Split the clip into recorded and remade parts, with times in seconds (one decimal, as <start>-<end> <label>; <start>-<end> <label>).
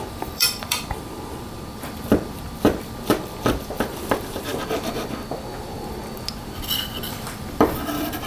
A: 0.0-4.5 remade; 4.5-5.6 recorded; 5.6-6.0 remade; 6.0-7.0 recorded; 7.0-8.3 remade